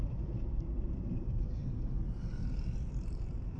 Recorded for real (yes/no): no